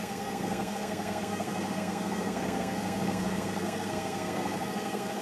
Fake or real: fake